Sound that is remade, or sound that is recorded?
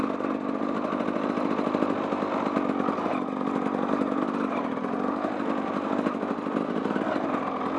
recorded